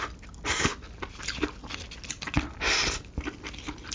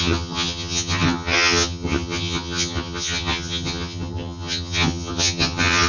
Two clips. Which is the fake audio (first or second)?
second